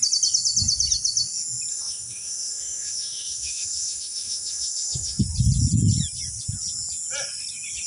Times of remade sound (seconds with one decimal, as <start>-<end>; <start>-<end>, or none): 1.7-5.2